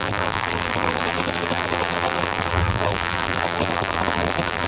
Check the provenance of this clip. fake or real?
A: fake